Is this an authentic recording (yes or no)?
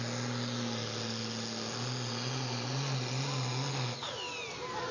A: yes